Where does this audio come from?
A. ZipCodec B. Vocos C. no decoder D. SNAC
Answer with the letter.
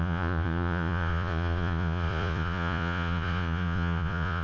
B